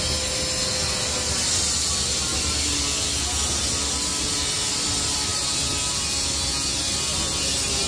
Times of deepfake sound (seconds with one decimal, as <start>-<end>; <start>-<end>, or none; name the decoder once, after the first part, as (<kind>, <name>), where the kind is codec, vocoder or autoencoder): none